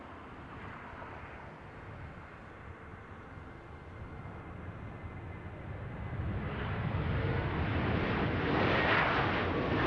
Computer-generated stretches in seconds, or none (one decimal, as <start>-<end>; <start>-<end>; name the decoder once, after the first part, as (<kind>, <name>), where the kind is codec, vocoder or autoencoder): none